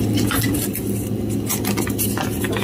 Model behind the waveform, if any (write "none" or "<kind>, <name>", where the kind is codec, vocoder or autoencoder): none